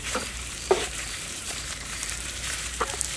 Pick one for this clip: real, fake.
fake